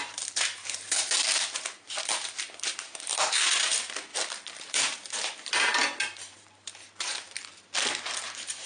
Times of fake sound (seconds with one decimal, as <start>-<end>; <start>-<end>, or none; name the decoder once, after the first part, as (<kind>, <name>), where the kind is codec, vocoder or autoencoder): 0.0-4.1 (vocoder, BigVGAN v2); 4.6-5.7; 6.4-7.4; 8.0-8.7